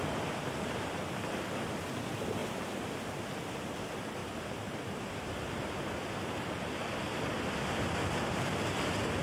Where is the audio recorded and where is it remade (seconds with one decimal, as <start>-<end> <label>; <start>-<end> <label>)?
0.0-1.8 remade; 1.8-2.4 recorded; 2.4-3.3 remade; 3.3-4.2 recorded; 4.2-5.3 remade; 5.3-9.2 recorded